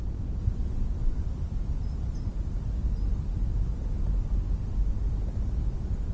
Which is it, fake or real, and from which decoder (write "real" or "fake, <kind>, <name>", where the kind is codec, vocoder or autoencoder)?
real